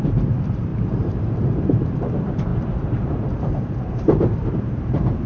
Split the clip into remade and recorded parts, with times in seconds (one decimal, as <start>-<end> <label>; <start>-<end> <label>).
0.0-5.3 remade